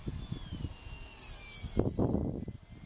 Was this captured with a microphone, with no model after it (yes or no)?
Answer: yes